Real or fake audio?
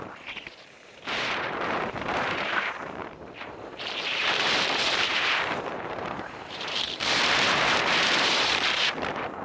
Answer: fake